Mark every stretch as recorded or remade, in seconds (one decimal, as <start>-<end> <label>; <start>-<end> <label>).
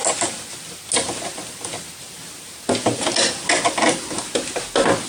0.0-5.1 recorded